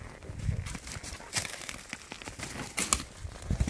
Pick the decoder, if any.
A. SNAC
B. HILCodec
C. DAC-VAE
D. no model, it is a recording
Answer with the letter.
D